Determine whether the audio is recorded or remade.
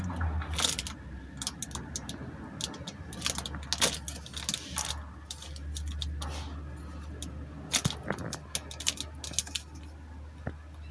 recorded